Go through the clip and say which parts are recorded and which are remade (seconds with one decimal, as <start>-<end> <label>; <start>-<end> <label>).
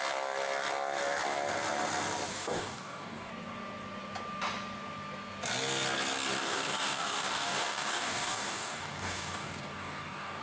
0.0-2.3 recorded; 2.3-3.3 remade; 3.3-6.4 recorded; 6.4-10.4 remade